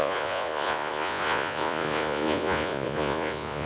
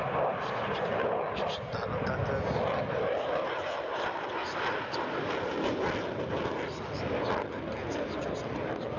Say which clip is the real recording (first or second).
second